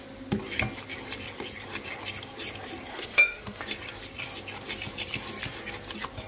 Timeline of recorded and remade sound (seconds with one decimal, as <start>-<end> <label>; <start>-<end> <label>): 0.0-2.9 recorded; 2.9-3.6 remade; 3.6-6.3 recorded